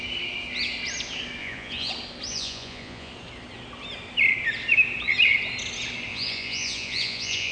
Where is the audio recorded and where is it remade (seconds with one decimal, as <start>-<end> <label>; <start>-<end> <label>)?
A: 0.0-1.4 recorded; 1.4-1.9 remade; 1.9-2.3 recorded; 2.3-3.1 remade; 3.1-6.1 recorded; 6.1-7.5 remade